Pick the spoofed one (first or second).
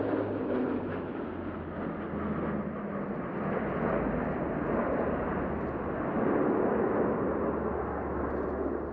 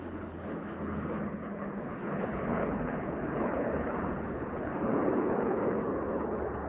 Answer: second